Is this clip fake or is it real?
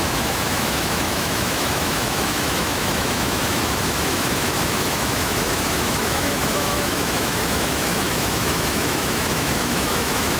fake